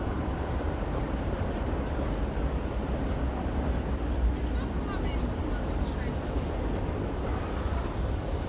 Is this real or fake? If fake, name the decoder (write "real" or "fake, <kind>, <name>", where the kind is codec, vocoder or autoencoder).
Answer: real